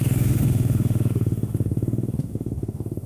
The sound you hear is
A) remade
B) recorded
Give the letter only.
A